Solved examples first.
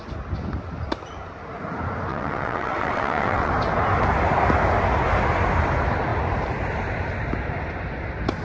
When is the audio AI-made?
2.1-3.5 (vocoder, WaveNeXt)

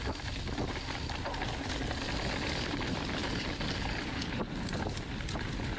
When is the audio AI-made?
none

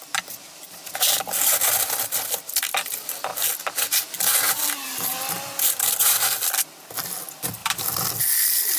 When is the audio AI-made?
none

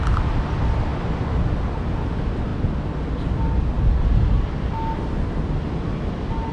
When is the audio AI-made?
none

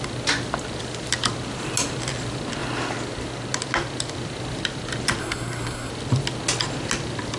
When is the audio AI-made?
5.2-5.9 (codec, SNAC)

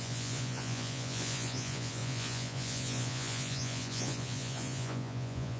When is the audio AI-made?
0.0-5.6 (vocoder, Vocos)

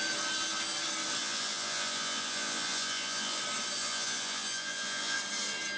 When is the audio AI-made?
1.2-3.4 (vocoder, Vocos); 3.8-5.2